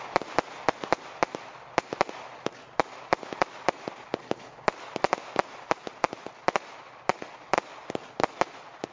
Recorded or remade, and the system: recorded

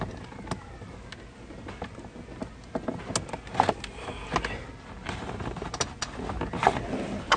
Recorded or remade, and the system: recorded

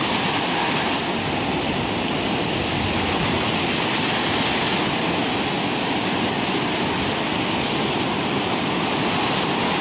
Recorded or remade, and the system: recorded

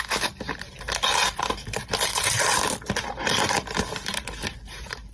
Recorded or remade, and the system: recorded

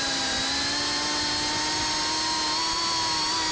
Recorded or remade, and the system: recorded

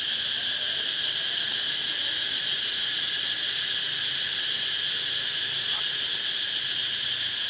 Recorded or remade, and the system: recorded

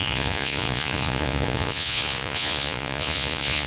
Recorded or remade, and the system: remade, vocoder, Vocos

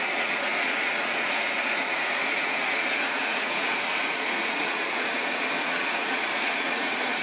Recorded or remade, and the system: remade, vocoder, Vocos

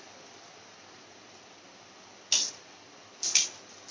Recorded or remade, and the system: recorded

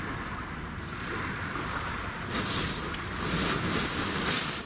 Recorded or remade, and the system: recorded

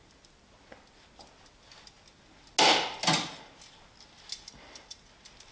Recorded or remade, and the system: recorded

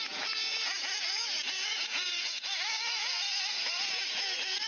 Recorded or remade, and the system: remade, vocoder, Vocos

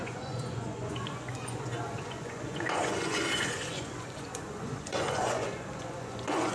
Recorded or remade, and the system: remade, vocoder, Vocos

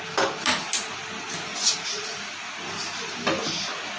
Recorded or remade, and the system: recorded